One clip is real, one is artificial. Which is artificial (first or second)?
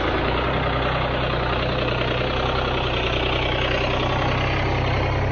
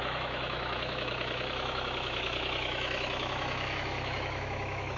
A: second